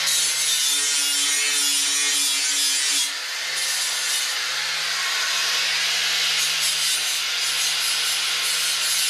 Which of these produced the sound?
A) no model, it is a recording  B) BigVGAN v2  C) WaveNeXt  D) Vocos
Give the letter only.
A